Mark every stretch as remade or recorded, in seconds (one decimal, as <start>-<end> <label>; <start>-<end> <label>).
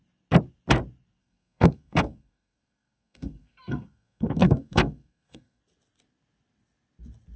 0.0-1.2 recorded; 1.2-5.6 remade; 5.6-7.4 recorded